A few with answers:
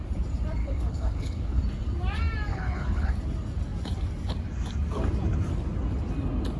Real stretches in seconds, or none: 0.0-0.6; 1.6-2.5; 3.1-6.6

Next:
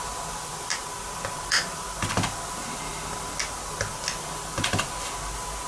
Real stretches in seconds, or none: 0.0-5.7